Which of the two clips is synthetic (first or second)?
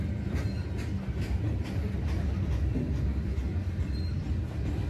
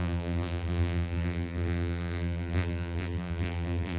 second